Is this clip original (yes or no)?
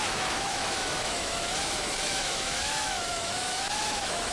no